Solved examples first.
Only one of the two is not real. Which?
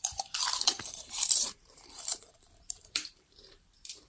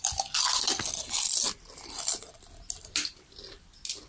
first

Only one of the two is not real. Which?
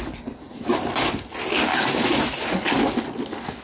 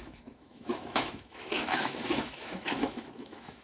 second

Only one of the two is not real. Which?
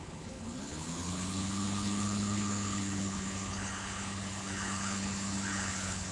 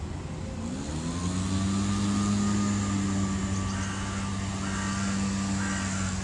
first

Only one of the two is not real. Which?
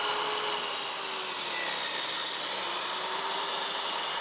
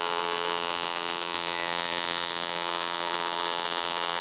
second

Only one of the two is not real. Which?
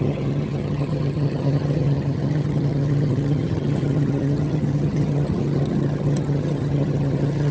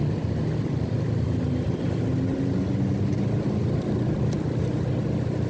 first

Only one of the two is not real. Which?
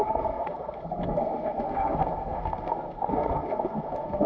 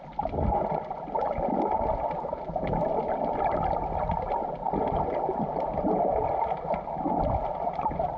first